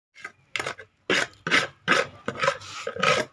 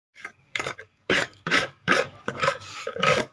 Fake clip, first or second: second